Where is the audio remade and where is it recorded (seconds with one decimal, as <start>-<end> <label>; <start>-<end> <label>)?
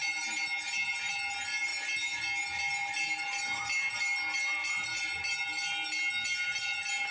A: 0.0-7.1 recorded